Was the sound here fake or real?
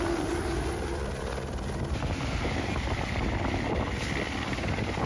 real